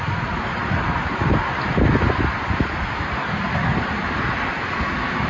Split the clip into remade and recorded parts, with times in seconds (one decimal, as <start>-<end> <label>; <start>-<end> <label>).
0.0-5.3 recorded